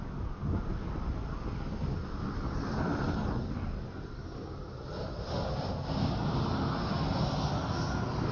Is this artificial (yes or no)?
no